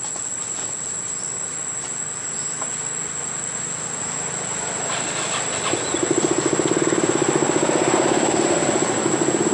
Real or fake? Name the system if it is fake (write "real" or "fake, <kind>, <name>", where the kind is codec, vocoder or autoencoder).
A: real